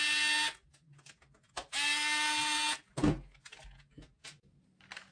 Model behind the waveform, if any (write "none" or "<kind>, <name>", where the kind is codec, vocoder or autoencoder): none